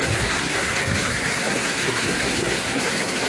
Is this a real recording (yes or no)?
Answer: no